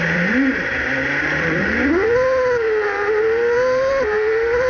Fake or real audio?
fake